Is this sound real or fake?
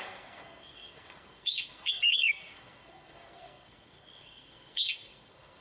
fake